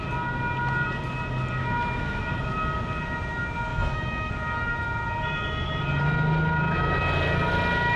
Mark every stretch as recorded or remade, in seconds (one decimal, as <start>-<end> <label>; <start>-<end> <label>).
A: 0.0-1.6 recorded; 1.6-2.2 remade; 2.2-3.7 recorded; 3.7-4.3 remade; 4.3-8.0 recorded

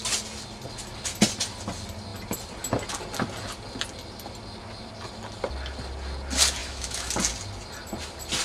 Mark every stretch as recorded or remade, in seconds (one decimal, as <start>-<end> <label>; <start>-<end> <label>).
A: 0.0-6.6 recorded; 6.6-7.1 remade; 7.1-8.4 recorded